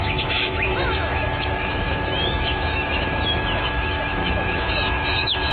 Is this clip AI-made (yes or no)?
yes